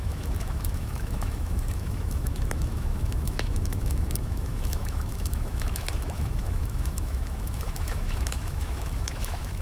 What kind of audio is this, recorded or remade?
remade